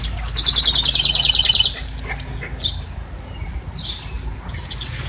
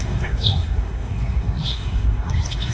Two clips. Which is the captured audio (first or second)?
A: first